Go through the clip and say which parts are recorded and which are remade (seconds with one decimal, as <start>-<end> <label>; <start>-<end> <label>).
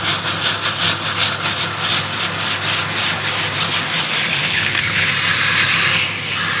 0.0-4.4 recorded; 4.4-5.1 remade; 5.1-6.6 recorded